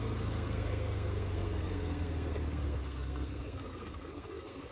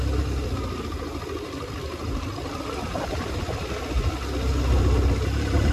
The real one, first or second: second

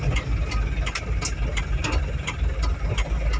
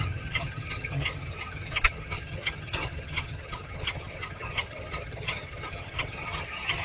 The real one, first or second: first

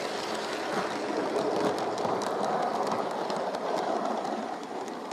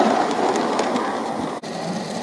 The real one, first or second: second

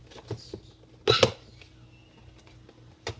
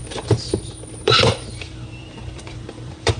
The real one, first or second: first